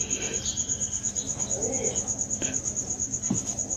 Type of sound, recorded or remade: recorded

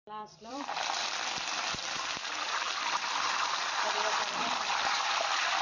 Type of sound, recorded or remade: remade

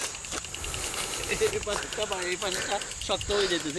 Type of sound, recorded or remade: recorded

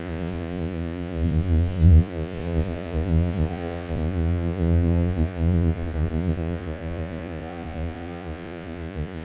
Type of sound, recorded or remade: remade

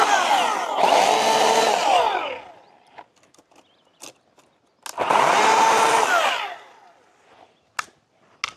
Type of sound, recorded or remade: recorded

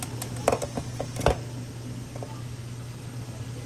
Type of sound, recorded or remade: recorded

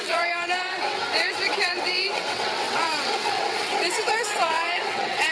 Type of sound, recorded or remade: remade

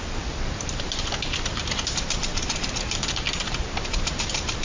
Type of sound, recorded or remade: remade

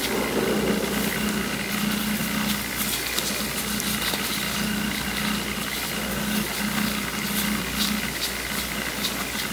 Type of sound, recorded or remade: recorded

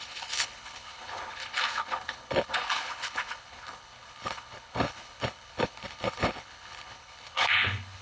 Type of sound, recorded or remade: remade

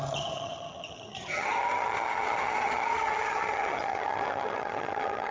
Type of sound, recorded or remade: remade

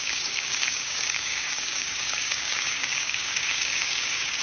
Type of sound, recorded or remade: remade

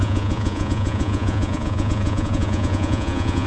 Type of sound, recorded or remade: remade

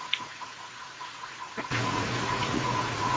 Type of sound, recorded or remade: remade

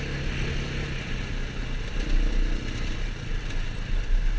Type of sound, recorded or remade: recorded